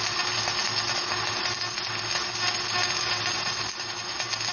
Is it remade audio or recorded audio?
recorded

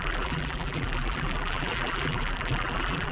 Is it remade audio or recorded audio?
remade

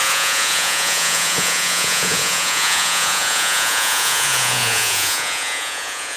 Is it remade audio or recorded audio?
remade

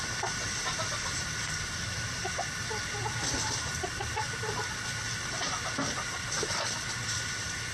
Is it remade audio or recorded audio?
recorded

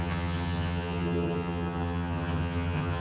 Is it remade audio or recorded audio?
remade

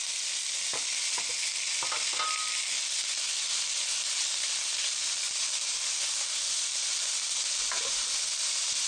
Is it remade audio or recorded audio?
recorded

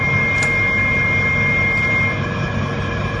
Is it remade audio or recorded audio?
recorded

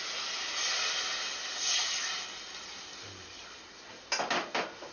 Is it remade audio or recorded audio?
recorded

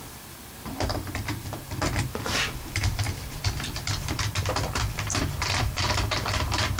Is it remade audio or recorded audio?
remade